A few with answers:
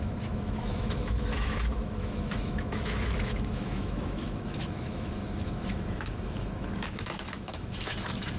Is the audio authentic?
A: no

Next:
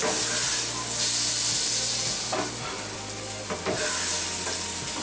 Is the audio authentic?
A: yes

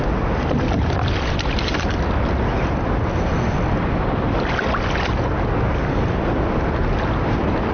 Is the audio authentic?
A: yes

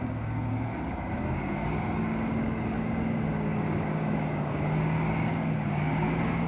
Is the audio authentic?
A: no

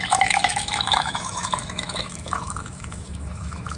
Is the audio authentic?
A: no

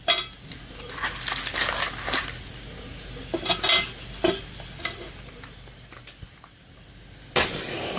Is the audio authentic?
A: yes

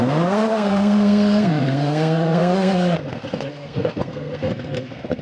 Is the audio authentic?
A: no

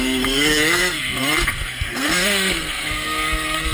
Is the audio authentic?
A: no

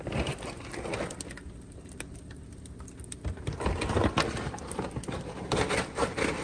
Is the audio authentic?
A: yes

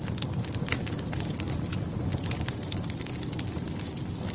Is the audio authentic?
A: yes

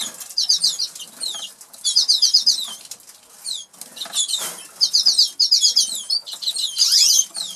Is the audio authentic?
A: yes